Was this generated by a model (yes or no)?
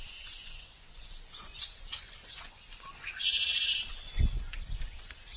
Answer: yes